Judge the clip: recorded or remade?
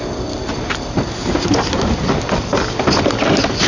recorded